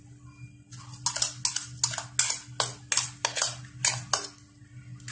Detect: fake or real real